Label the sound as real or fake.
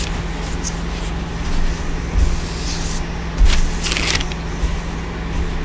real